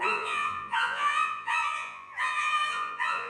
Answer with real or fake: fake